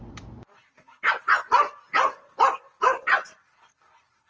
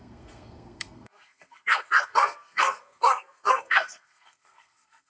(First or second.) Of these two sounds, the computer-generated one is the second